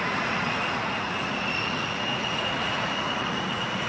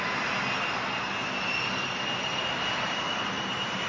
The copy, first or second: first